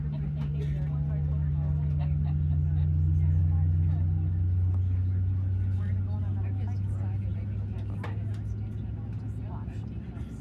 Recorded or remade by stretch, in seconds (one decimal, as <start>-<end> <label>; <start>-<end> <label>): 0.0-10.4 recorded